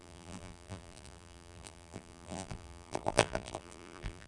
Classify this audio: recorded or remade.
remade